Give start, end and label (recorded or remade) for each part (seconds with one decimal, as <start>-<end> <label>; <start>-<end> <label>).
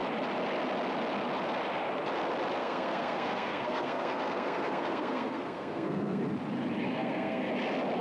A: 0.0-2.6 recorded; 2.6-6.2 remade; 6.2-6.9 recorded; 6.9-7.5 remade; 7.5-8.0 recorded